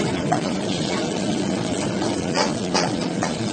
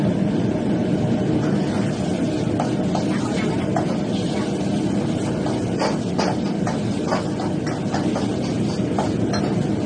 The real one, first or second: second